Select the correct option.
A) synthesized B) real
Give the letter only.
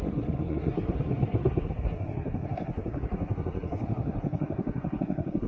A